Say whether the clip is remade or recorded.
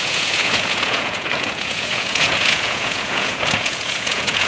remade